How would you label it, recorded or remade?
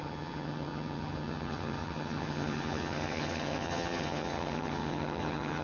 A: remade